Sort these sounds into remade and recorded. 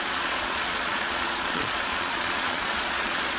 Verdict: remade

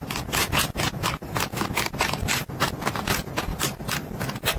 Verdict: recorded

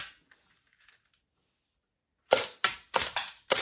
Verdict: recorded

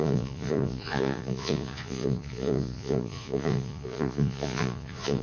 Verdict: remade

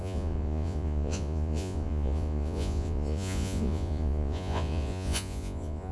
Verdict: remade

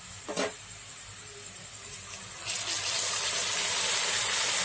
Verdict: recorded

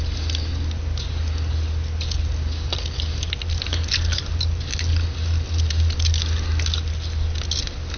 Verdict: recorded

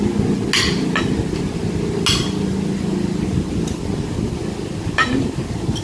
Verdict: recorded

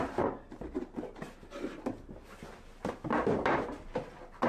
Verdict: recorded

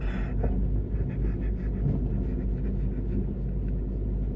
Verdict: recorded